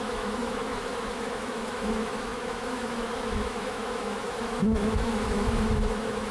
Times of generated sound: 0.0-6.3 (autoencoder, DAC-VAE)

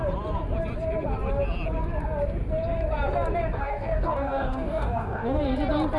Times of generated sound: 3.6-5.4 (codec, DAC)

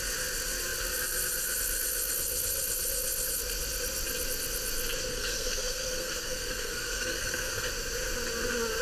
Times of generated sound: 5.1-7.7 (codec, SNAC)

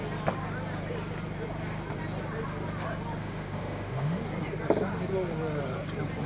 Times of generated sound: 3.2-4.2 (autoencoder, DAC-VAE)